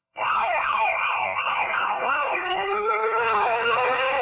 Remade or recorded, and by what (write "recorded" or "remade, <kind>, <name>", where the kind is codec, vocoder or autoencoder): remade, codec, SNAC